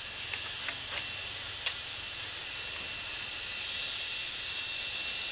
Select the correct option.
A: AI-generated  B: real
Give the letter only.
B